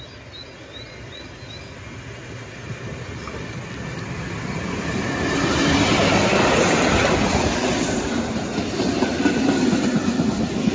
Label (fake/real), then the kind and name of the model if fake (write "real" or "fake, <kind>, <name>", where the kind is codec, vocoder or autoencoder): real